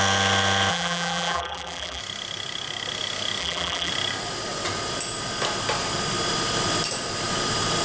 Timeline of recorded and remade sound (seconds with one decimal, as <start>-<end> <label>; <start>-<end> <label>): 0.0-0.7 recorded; 0.7-2.0 remade; 2.0-3.4 recorded; 3.4-3.9 remade; 3.9-7.8 recorded